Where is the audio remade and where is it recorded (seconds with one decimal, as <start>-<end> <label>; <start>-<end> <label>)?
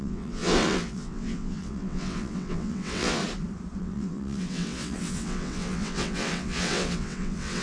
0.0-3.2 remade; 3.2-3.8 recorded; 3.8-7.6 remade